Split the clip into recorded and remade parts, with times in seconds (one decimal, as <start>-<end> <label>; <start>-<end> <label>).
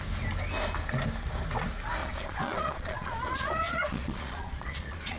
0.0-2.0 recorded; 2.0-5.2 remade